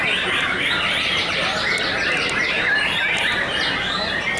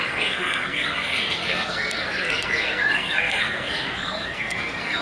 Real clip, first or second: first